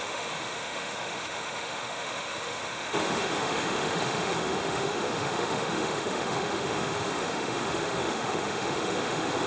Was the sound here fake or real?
fake